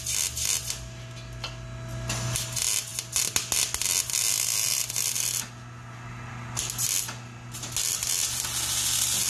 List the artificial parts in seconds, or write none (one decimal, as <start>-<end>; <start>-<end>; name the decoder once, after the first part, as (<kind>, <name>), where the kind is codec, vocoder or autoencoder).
none